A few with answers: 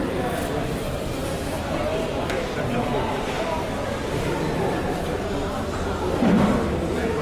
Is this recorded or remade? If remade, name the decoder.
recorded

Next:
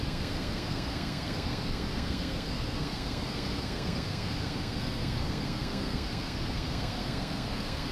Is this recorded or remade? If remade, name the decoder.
remade, codec, SNAC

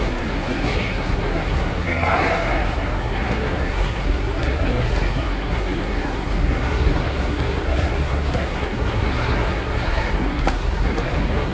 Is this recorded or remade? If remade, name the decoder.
remade, codec, SNAC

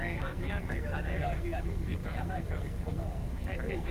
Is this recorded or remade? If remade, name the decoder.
remade, codec, SNAC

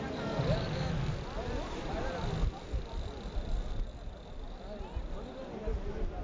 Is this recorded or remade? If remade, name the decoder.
recorded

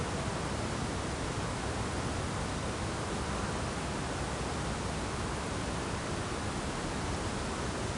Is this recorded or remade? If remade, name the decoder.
recorded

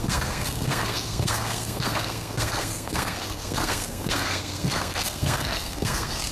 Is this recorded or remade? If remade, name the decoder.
remade, codec, SNAC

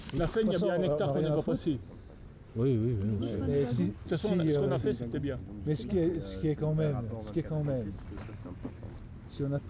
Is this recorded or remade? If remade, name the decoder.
recorded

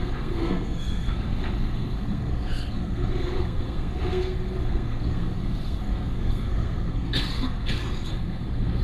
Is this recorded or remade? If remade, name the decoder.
remade, codec, SNAC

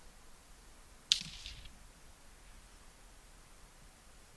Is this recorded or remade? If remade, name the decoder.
recorded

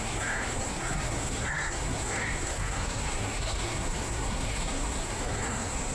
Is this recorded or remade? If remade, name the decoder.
remade, codec, SNAC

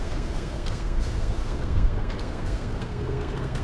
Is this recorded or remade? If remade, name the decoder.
remade, codec, SNAC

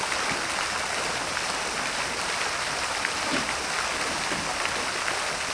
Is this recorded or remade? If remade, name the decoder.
recorded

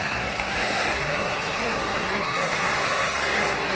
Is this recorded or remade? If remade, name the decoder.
remade, codec, SNAC